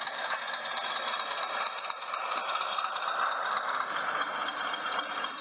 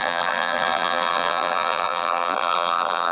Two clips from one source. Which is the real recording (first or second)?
first